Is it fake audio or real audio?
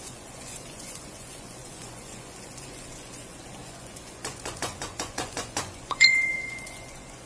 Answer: fake